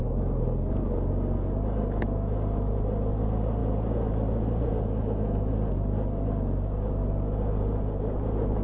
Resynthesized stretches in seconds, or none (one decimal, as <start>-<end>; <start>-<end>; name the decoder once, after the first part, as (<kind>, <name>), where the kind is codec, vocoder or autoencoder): none